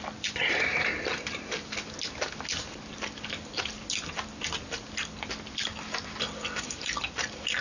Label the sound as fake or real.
real